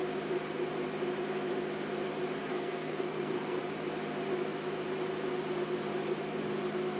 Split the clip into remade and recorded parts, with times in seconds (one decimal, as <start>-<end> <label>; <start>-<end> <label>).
0.0-2.4 recorded; 2.4-3.6 remade; 3.6-7.0 recorded